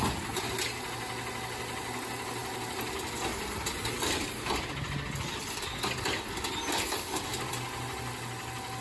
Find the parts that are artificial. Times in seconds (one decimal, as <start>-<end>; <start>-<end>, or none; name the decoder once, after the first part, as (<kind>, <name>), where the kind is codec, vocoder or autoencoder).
none

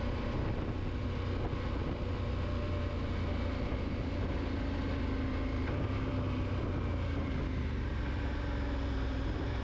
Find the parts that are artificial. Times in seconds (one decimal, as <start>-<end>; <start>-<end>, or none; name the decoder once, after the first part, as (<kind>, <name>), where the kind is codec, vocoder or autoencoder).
none

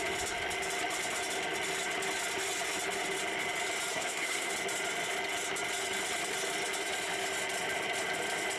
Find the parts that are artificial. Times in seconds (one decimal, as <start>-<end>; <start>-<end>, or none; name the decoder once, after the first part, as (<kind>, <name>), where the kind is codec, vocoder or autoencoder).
3.9-4.5 (codec, SNAC)

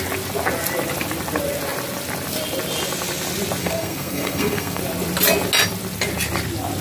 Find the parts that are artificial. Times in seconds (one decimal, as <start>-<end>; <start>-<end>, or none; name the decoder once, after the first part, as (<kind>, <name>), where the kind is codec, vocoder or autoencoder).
3.6-4.8 (codec, SNAC)

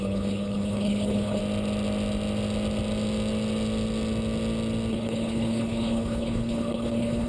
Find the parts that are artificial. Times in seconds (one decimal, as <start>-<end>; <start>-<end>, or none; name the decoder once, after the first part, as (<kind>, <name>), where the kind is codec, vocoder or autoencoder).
0.0-1.4 (codec, HILCodec); 4.9-7.3

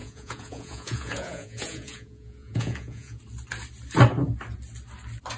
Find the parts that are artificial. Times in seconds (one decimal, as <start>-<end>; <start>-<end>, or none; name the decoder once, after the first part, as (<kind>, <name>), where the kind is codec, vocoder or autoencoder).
0.0-3.2 (vocoder, Vocos)

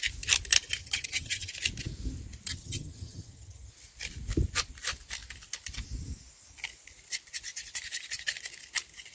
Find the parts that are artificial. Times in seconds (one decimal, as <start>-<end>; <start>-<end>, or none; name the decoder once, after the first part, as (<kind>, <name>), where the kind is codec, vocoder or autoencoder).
0.8-1.5 (vocoder, HiFi-GAN); 2.5-3.7

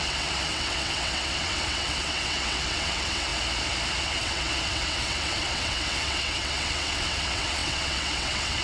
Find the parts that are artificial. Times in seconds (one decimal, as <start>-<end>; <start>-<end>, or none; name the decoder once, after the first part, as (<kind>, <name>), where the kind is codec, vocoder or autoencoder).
0.0-3.3 (vocoder, WaveNeXt); 4.0-8.6